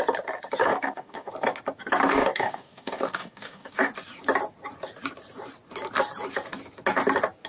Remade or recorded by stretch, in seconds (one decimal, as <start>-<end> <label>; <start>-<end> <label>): 0.0-0.6 recorded; 0.6-1.3 remade; 1.3-2.1 recorded; 2.1-3.9 remade; 3.9-7.5 recorded